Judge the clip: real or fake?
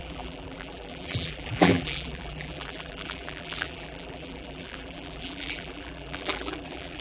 fake